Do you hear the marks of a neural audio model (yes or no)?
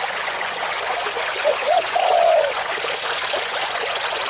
yes